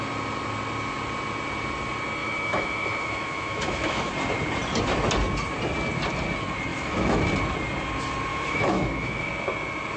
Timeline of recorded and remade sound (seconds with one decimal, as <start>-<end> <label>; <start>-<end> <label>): 0.0-2.2 recorded; 2.2-4.1 remade; 4.1-6.7 recorded; 6.7-7.2 remade; 7.2-8.3 recorded; 8.3-9.3 remade; 9.3-10.0 recorded